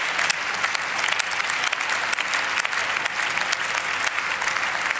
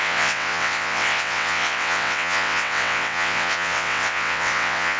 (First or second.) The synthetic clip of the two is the second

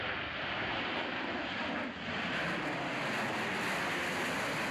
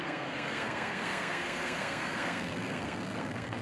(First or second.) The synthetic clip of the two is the second